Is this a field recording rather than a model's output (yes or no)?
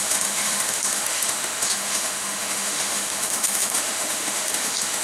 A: no